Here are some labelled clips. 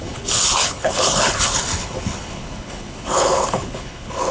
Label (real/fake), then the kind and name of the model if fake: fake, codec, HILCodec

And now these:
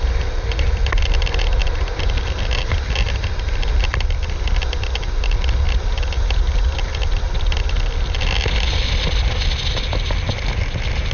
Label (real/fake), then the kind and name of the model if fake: real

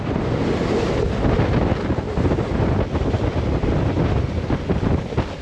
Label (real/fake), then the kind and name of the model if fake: real